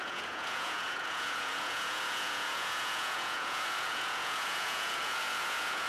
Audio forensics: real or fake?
fake